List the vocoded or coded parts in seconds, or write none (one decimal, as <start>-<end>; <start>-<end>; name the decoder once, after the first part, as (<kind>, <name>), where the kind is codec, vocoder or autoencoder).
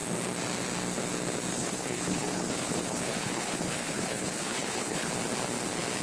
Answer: 1.5-5.1 (codec, HILCodec)